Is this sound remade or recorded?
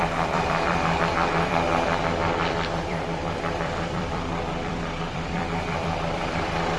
remade